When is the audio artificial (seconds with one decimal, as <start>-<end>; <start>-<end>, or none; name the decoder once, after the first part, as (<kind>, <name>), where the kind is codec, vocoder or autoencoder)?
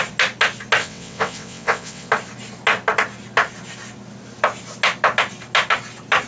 0.8-2.1 (vocoder, WaveNeXt)